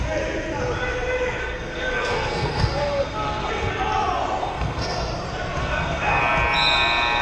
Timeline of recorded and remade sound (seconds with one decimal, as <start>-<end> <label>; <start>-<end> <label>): 0.0-1.4 recorded; 1.4-3.7 remade; 3.7-4.4 recorded; 4.4-5.1 remade; 5.1-5.6 recorded; 5.6-6.2 remade; 6.2-7.2 recorded